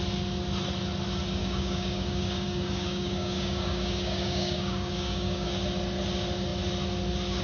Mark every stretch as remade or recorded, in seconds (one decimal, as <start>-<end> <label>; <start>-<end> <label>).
0.0-1.4 recorded; 1.4-5.5 remade; 5.5-7.4 recorded